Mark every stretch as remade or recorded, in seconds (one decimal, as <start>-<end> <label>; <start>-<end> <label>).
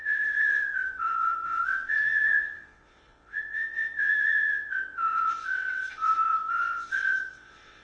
0.0-7.8 remade